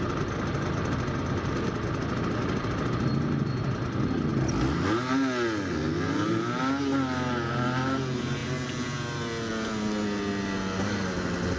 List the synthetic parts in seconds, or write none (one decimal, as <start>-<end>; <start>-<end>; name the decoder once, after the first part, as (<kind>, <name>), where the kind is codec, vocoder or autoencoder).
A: none